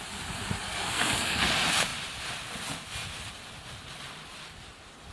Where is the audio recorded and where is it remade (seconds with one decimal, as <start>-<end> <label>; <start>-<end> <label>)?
0.0-0.6 recorded; 0.6-1.5 remade; 1.5-5.1 recorded